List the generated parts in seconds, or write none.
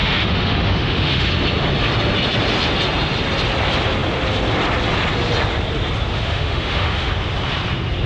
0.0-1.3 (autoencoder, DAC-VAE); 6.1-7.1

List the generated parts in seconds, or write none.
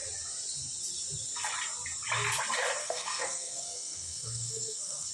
2.8-5.1 (codec, SNAC)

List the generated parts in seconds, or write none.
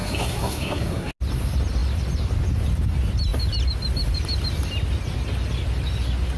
0.0-1.1 (codec, SNAC)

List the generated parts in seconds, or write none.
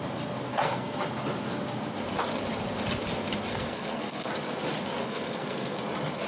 0.5-1.1 (codec, SNAC); 3.5-4.3; 5.0-5.8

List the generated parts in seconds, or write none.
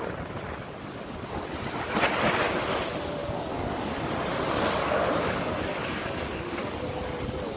3.2-4.0 (codec, DAC); 4.8-6.7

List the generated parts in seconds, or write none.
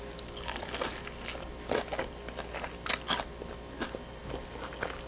none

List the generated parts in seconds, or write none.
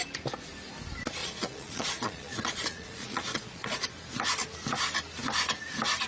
1.2-3.9 (vocoder, Vocos)